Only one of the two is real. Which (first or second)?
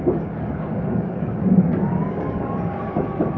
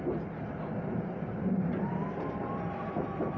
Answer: second